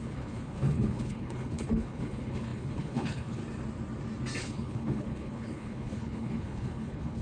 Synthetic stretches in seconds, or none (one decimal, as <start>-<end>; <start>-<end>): 0.0-3.4; 4.4-7.2